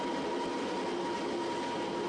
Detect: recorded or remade recorded